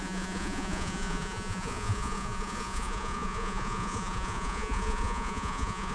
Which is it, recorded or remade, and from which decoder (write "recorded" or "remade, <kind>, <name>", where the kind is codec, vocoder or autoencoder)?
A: remade, vocoder, Vocos